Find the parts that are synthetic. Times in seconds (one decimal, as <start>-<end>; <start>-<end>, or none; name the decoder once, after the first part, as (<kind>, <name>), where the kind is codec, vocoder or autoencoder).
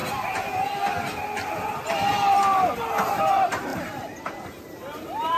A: 3.2-5.4 (vocoder, BigVGAN v2)